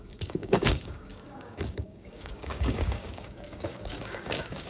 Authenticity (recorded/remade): remade